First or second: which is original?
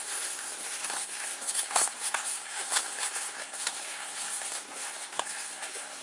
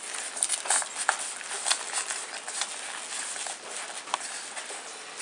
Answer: second